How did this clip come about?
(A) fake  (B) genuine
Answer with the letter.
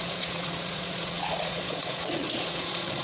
A